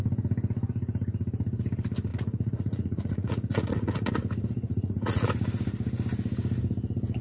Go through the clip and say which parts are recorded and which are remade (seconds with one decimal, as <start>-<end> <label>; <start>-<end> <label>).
0.0-2.1 recorded; 2.1-4.1 remade; 4.1-4.7 recorded; 4.7-5.3 remade; 5.3-7.2 recorded